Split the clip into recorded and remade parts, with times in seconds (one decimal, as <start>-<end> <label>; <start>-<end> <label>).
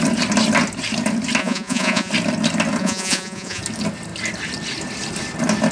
0.0-1.4 recorded; 1.4-2.1 remade; 2.1-2.8 recorded; 2.8-3.6 remade; 3.6-5.7 recorded